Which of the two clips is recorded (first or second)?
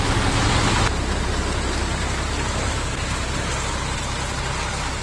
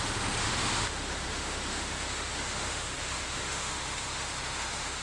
first